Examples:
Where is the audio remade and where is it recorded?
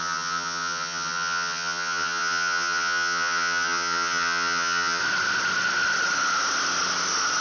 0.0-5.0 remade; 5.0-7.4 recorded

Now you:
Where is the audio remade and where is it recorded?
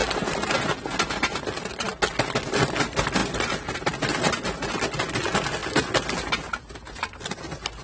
0.0-7.8 recorded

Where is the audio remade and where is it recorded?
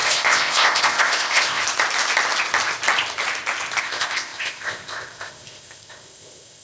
0.0-1.6 remade; 1.6-3.8 recorded; 3.8-6.6 remade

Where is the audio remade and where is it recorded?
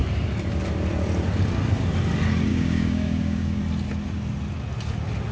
0.0-2.5 recorded; 2.5-3.6 remade; 3.6-5.3 recorded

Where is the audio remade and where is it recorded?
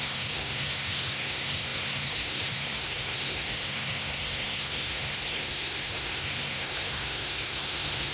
0.0-8.1 remade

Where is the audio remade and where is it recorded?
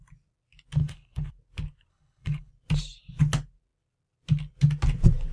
0.0-0.8 recorded; 0.8-1.3 remade; 1.3-1.9 recorded; 1.9-2.5 remade; 2.5-5.3 recorded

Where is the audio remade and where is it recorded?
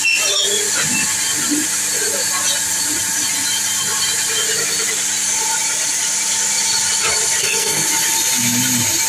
0.0-7.4 recorded; 7.4-7.9 remade; 7.9-9.1 recorded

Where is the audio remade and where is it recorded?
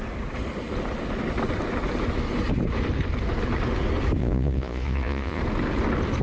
0.0-4.2 recorded; 4.2-5.4 remade; 5.4-6.2 recorded